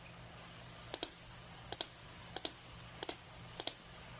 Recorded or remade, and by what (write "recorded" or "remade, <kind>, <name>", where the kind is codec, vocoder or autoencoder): recorded